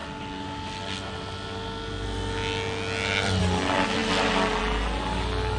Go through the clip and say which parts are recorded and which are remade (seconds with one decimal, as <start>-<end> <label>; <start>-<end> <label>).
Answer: 0.0-5.6 recorded